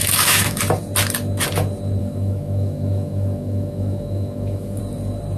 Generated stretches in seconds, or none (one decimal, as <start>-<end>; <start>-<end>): 0.0-0.6; 2.0-4.8

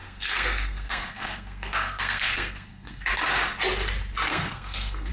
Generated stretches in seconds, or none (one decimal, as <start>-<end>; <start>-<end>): 0.0-3.1; 4.3-5.1

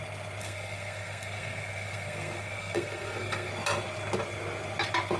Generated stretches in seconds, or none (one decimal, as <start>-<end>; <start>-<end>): 0.4-3.5

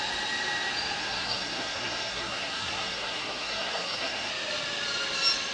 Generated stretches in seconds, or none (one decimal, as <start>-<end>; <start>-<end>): 1.0-4.3

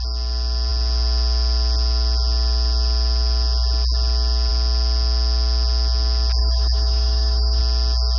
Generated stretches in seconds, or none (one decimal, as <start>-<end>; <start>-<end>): 6.4-7.6

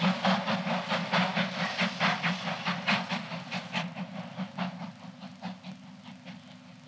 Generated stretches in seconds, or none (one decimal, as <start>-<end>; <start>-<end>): none